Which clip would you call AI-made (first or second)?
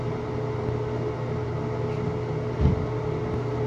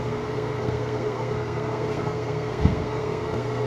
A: second